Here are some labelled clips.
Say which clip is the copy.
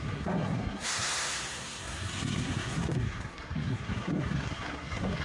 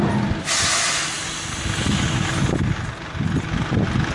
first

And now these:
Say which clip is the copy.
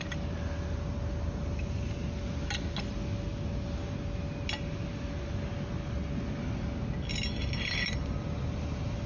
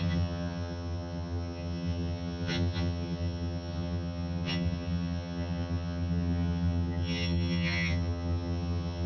second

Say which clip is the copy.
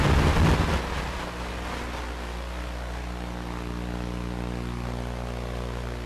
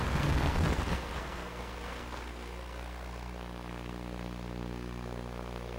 second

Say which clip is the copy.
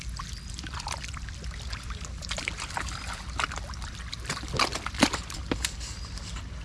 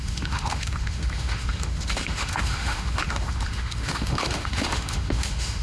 second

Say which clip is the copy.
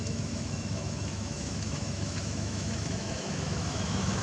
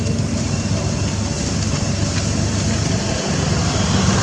first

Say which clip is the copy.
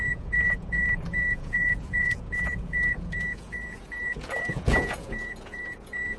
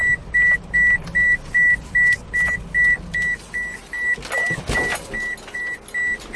first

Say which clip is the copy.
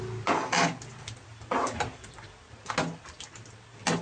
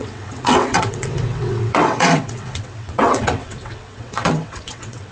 second